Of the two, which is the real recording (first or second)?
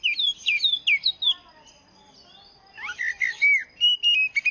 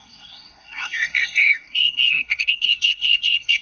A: first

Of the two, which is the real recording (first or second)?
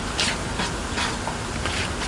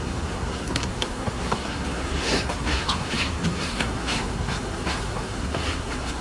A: first